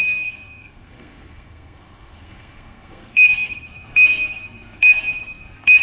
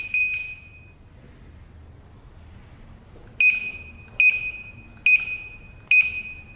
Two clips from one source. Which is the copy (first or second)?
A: first